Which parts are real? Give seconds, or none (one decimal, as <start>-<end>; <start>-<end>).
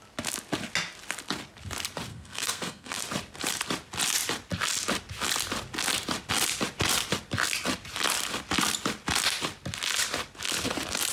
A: 0.0-2.1; 3.0-11.1